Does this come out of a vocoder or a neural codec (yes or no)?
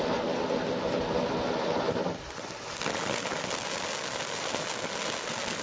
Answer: no